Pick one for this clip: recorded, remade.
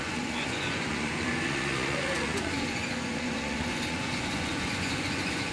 remade